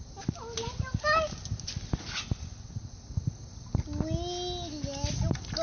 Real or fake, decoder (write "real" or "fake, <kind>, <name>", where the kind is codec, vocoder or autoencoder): real